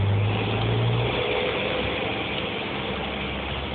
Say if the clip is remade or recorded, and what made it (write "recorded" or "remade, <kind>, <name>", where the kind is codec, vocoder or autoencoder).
recorded